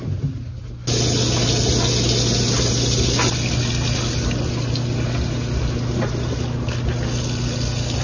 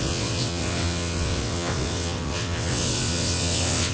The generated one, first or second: second